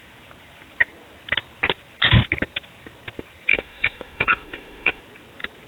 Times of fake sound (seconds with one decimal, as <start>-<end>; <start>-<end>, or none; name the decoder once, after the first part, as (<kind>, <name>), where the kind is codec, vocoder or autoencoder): 3.5-5.0 (autoencoder, DAC-VAE)